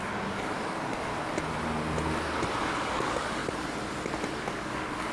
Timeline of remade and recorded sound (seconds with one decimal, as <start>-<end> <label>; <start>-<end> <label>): 0.0-1.1 remade; 1.1-2.6 recorded; 2.6-3.4 remade; 3.4-4.4 recorded; 4.4-5.1 remade